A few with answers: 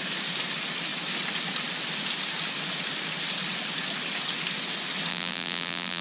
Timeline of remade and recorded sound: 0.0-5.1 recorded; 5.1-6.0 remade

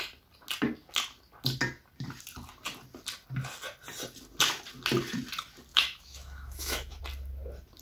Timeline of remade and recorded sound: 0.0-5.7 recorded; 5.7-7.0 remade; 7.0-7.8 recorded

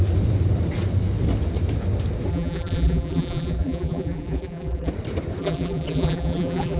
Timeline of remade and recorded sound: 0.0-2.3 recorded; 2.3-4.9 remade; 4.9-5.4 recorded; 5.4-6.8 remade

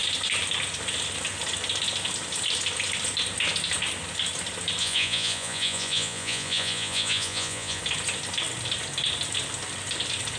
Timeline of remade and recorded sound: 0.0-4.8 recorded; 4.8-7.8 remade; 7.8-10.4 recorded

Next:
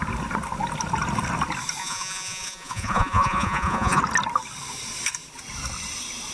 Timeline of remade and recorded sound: 0.0-1.8 recorded; 1.8-4.0 remade; 4.0-6.3 recorded

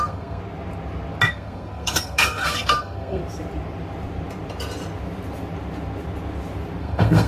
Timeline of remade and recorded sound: 0.0-0.4 remade; 0.4-1.3 recorded; 1.3-3.2 remade; 3.2-6.8 recorded; 6.8-7.3 remade

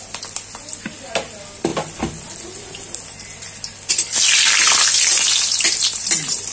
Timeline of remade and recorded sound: 0.0-6.5 recorded